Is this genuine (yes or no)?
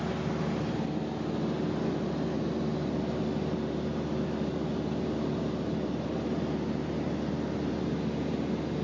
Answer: yes